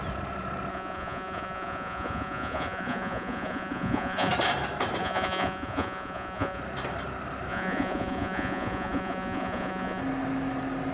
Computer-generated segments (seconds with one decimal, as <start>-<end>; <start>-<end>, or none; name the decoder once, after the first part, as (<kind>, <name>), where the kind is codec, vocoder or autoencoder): 0.7-4.3 (vocoder, Vocos); 5.0-6.6; 7.5-10.0